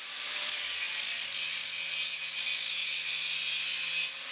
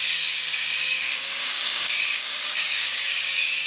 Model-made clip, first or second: second